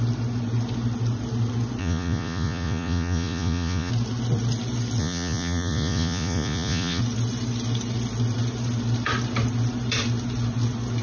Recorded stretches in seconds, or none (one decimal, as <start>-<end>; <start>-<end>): 0.0-1.8; 3.9-5.0; 7.0-11.0